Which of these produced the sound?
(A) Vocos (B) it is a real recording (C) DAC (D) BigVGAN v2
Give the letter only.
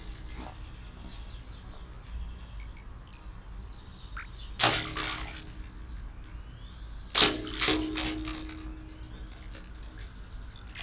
B